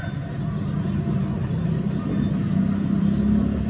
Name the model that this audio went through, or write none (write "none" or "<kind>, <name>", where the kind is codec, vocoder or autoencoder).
none